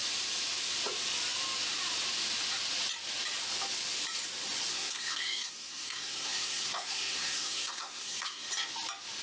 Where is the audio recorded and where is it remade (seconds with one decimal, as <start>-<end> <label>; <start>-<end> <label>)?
0.0-4.7 recorded; 4.7-8.5 remade; 8.5-9.2 recorded